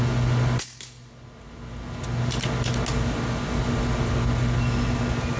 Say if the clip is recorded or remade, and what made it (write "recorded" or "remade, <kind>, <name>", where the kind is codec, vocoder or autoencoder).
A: recorded